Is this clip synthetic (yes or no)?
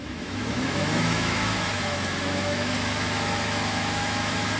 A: yes